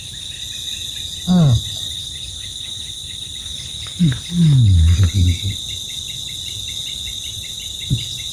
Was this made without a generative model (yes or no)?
yes